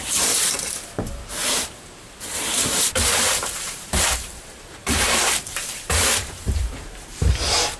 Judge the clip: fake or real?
fake